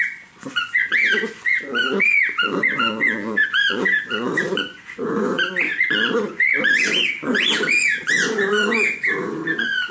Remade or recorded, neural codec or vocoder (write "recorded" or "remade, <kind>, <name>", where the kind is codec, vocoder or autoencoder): remade, vocoder, Vocos